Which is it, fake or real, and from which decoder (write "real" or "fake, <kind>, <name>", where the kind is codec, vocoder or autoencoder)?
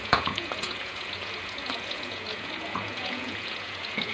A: fake, vocoder, Vocos